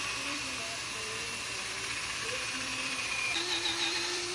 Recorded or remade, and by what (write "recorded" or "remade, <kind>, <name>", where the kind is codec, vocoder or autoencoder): remade, vocoder, BigVGAN v2